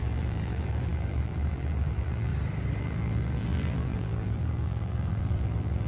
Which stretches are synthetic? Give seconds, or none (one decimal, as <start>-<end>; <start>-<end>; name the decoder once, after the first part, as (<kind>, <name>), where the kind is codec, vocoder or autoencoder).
0.0-2.3 (vocoder, BigVGAN v2); 2.8-5.9